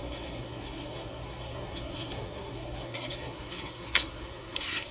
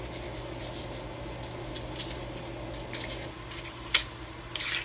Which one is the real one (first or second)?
second